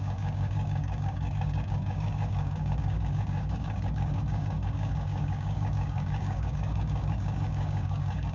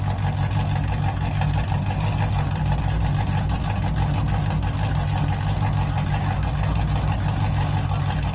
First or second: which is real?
second